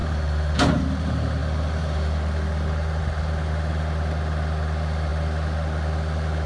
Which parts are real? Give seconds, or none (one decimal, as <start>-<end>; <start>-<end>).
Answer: 0.0-6.5